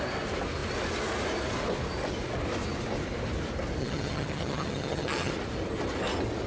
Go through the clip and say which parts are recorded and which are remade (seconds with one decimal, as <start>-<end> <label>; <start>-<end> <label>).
0.0-3.8 recorded; 3.8-5.3 remade; 5.3-6.5 recorded